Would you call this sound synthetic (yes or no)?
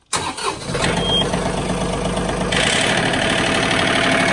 no